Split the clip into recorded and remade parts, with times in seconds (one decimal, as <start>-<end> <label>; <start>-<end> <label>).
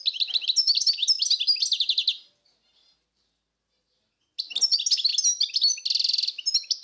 0.0-6.8 recorded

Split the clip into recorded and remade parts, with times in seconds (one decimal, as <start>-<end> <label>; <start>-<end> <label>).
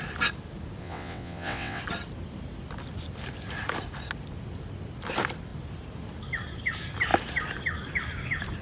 0.0-0.8 recorded; 0.8-1.8 remade; 1.8-8.6 recorded